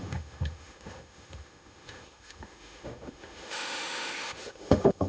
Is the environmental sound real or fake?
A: fake